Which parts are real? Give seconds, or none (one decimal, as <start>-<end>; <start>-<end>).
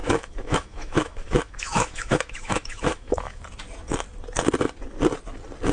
3.4-5.7